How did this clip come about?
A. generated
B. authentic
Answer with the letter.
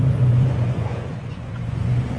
A